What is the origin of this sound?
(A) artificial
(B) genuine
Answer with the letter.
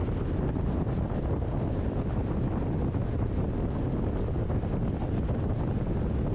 B